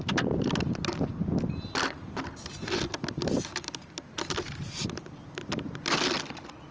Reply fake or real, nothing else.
real